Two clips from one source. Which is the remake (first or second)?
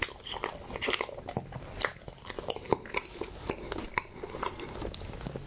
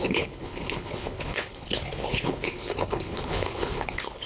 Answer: second